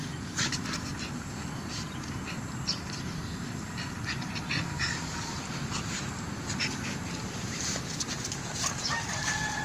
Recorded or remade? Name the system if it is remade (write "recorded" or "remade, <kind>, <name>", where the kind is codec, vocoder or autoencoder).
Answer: remade, vocoder, BigVGAN v2